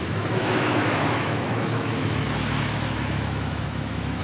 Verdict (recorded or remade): remade